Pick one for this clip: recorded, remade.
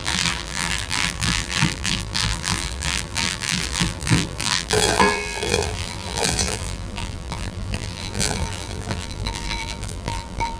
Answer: remade